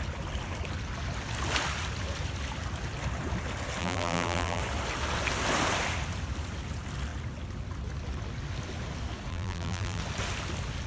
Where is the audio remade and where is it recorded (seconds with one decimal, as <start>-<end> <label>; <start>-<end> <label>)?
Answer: 0.0-3.8 recorded; 3.8-4.6 remade; 4.6-9.3 recorded; 9.3-10.0 remade; 10.0-10.9 recorded